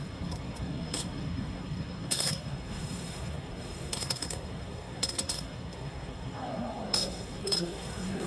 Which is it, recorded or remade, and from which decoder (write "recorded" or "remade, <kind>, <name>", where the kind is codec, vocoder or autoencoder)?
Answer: remade, codec, SNAC